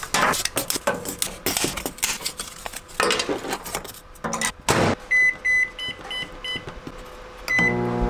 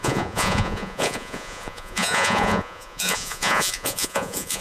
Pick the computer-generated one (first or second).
second